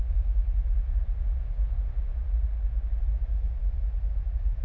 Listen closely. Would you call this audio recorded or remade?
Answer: recorded